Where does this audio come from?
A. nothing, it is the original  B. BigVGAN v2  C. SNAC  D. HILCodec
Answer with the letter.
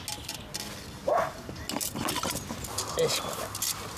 A